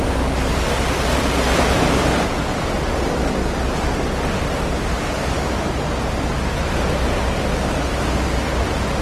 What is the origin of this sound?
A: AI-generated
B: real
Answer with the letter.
B